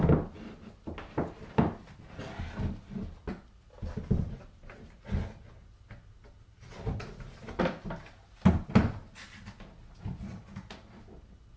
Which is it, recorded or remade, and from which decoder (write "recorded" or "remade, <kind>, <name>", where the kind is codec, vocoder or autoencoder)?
recorded